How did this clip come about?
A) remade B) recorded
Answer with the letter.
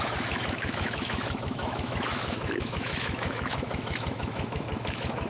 A